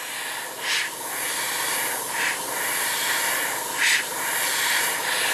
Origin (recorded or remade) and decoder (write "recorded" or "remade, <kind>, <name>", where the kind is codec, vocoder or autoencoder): recorded